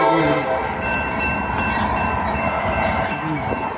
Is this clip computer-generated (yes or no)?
yes